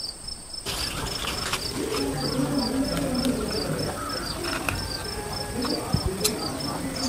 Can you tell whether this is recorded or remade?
recorded